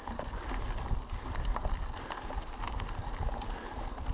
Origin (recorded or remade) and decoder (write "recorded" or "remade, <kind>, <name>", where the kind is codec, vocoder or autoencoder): recorded